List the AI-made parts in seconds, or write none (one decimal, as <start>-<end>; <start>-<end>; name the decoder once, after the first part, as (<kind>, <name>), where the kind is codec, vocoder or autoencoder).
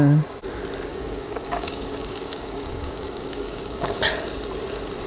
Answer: 0.9-4.0 (codec, DAC)